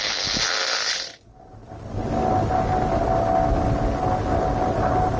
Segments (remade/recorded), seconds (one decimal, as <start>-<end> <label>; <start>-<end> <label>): 0.0-5.2 recorded